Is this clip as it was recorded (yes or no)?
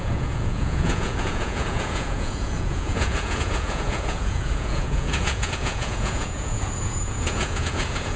no